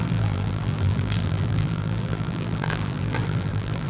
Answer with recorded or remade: remade